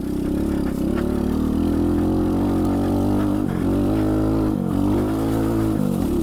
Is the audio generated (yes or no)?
no